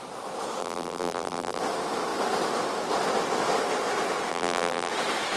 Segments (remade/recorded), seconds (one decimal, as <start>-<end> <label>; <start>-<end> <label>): 0.0-0.6 recorded; 0.6-1.6 remade; 1.6-4.3 recorded; 4.3-4.9 remade; 4.9-5.4 recorded

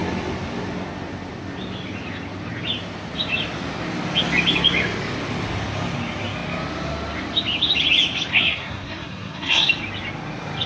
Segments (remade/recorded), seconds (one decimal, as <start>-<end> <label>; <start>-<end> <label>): 0.0-8.3 recorded; 8.3-9.7 remade; 9.7-10.7 recorded

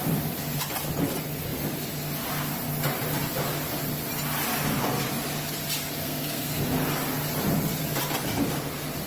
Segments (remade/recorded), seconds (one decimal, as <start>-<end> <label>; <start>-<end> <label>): 0.0-6.0 recorded; 6.0-6.6 remade; 6.6-9.1 recorded